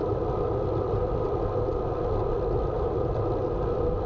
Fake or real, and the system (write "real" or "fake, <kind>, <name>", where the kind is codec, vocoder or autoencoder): real